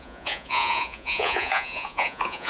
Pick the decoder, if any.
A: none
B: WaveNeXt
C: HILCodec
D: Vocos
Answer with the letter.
D